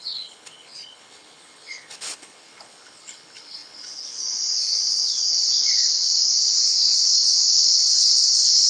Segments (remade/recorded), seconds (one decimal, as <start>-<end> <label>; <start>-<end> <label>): 0.0-8.7 remade